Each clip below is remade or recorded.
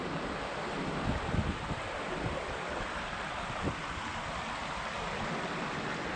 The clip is recorded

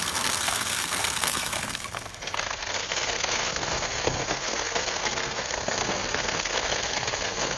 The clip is remade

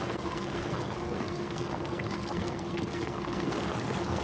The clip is remade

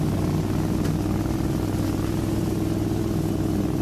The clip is recorded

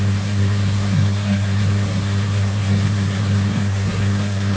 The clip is remade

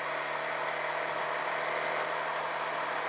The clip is recorded